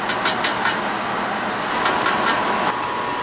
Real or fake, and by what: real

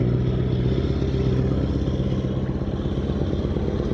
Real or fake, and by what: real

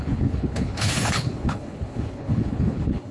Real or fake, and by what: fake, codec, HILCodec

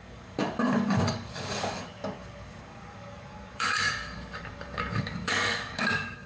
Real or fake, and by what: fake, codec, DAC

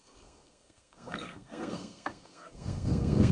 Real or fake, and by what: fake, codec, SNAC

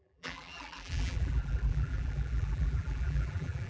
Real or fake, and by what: fake, vocoder, BigVGAN v2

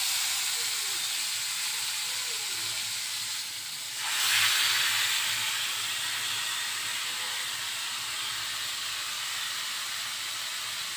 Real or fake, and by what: real